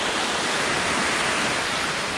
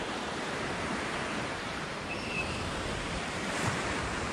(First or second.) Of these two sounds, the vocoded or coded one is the second